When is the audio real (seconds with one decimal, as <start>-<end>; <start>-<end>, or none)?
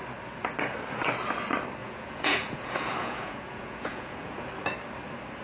0.0-1.8; 4.5-5.4